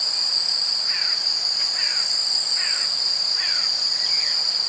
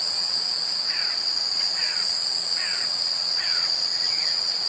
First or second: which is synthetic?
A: second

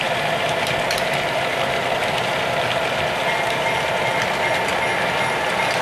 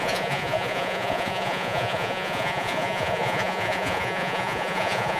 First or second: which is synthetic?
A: second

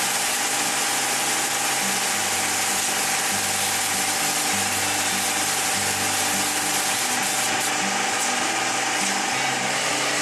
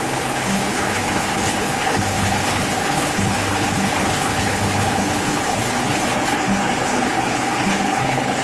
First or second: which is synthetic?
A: second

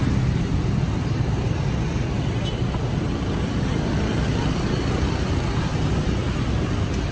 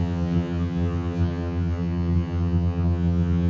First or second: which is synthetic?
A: second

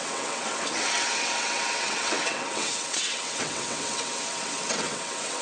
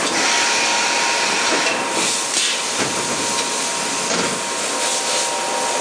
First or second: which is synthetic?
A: first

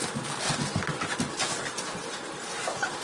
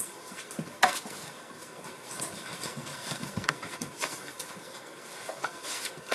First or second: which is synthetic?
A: second